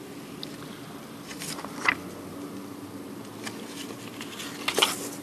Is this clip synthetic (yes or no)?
no